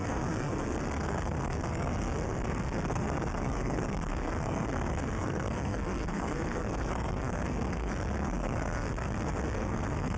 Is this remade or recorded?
remade